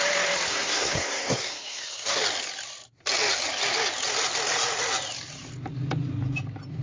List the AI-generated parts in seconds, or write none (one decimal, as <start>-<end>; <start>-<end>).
0.5-2.2